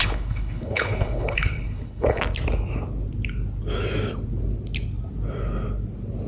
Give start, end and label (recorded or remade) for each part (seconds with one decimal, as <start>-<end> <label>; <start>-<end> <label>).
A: 0.0-2.2 remade; 2.2-6.3 recorded